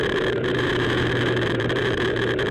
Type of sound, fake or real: fake